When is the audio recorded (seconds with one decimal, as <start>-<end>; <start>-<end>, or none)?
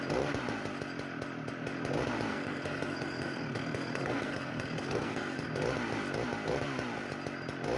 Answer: 0.0-2.3; 5.5-7.8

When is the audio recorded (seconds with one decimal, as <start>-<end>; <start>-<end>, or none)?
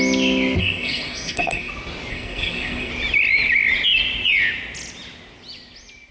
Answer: 0.0-0.6; 1.7-2.1; 2.9-6.1